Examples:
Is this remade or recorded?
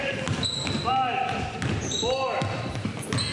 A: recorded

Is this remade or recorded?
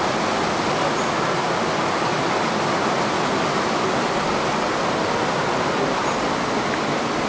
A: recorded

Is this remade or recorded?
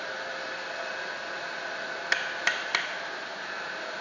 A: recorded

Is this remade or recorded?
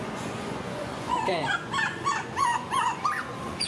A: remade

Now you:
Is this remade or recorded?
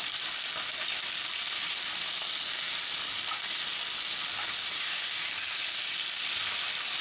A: recorded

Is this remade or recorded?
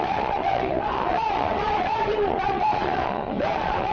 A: remade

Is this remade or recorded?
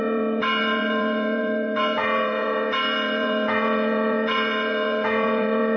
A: remade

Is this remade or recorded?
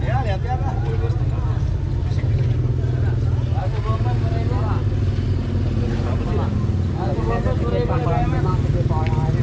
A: recorded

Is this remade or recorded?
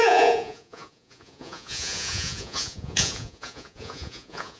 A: remade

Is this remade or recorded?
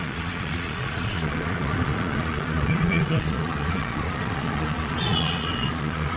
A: remade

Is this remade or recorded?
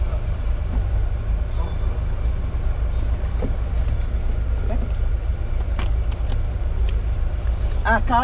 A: recorded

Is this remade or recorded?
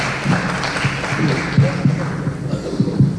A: recorded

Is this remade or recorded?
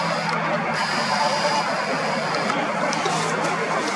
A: recorded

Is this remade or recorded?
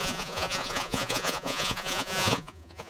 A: remade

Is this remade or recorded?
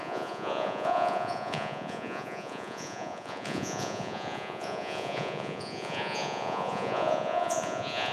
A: remade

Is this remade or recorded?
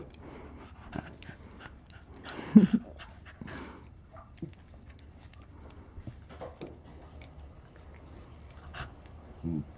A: recorded